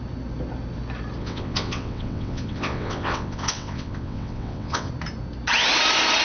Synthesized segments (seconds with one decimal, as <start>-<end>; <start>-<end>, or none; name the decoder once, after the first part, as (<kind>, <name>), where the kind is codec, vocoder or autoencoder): 1.2-4.9 (vocoder, WaveNeXt)